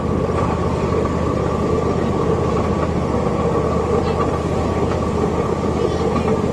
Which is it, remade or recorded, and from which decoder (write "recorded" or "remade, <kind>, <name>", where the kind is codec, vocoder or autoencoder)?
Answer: recorded